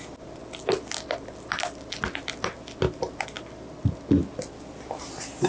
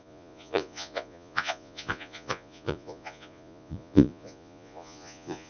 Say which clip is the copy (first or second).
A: second